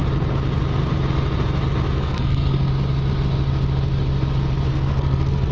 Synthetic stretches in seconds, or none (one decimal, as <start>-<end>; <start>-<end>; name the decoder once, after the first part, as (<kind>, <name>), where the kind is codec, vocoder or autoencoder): 2.0-2.7 (codec, SNAC); 4.7-5.5